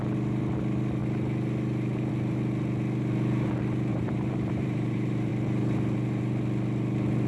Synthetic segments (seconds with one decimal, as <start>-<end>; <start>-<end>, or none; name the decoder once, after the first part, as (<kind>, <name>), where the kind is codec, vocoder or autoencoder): 3.9-5.3 (vocoder, BigVGAN v2)